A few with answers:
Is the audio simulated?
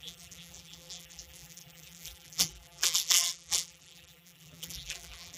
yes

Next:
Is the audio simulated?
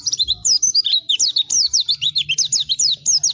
no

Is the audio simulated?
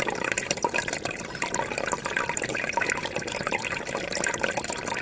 yes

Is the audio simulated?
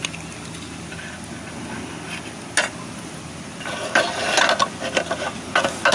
no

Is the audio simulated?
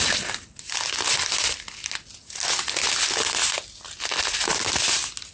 no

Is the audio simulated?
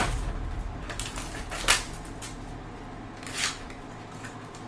no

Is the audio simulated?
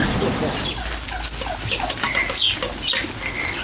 no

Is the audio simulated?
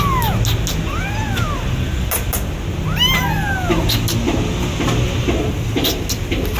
no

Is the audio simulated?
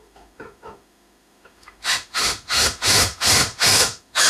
yes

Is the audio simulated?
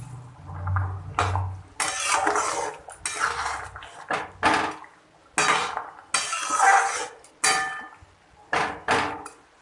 no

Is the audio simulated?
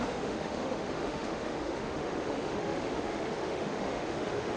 yes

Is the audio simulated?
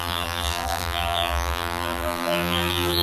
yes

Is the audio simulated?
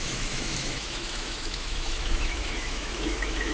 yes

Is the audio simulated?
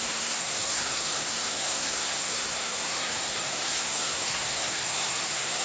yes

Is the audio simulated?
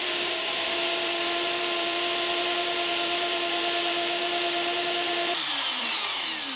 yes